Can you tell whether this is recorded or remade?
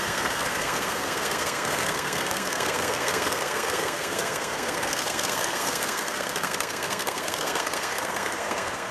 remade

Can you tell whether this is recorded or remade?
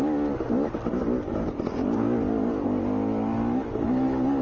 recorded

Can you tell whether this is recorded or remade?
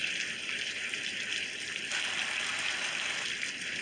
recorded